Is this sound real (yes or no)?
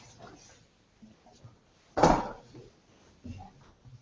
yes